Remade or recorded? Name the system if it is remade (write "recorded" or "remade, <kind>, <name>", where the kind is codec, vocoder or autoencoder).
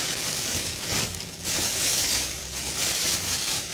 remade, codec, DAC